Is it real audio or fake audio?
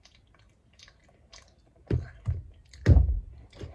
real